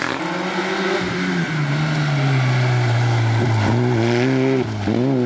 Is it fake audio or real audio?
real